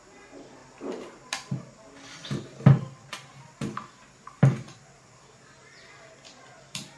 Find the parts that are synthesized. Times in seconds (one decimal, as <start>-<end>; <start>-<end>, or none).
none